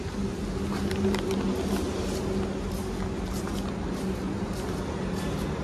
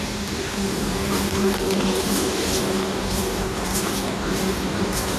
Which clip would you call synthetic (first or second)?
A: second